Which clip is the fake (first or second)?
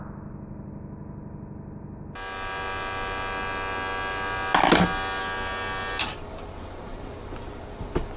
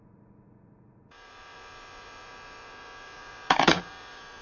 second